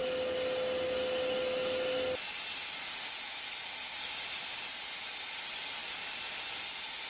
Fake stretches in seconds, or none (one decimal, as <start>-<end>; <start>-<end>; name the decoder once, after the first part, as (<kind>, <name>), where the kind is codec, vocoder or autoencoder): none

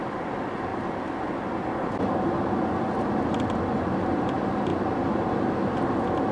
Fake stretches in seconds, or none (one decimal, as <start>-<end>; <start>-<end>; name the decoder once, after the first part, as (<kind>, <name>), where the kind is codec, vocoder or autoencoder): none

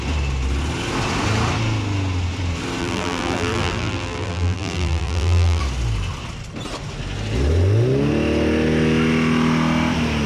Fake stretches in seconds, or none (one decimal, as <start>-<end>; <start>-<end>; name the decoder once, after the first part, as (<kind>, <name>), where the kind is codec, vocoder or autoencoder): 2.8-5.6 (vocoder, BigVGAN v2)